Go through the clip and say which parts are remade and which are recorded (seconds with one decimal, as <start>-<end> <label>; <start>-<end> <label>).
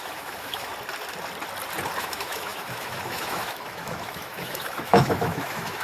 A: 0.0-0.7 remade; 0.7-2.0 recorded; 2.0-5.8 remade